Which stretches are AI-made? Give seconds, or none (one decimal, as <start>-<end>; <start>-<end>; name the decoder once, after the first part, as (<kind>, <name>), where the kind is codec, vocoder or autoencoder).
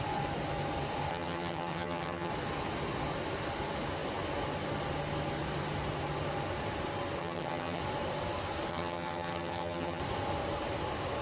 1.1-2.3 (vocoder, HiFi-GAN); 7.2-7.8; 8.7-10.0